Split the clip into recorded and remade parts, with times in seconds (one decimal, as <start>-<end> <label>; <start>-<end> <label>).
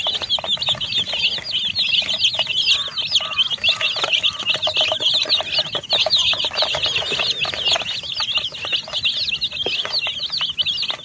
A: 0.0-11.0 recorded